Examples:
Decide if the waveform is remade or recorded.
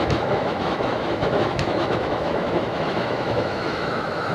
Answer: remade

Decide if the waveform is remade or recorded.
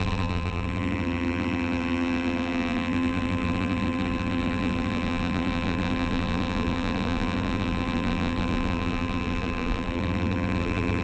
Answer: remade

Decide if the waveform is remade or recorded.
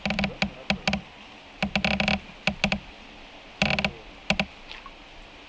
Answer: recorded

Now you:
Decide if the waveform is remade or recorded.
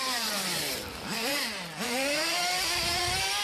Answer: remade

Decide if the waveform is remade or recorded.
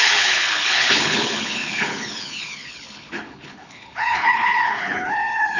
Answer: remade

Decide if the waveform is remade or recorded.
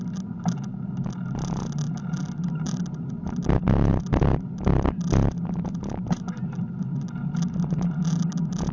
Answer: recorded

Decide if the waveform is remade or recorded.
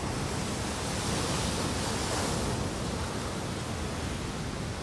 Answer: recorded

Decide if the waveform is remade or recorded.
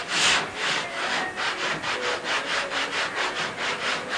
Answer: recorded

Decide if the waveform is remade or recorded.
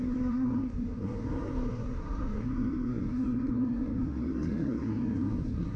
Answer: remade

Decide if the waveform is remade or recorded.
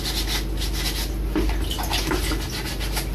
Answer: recorded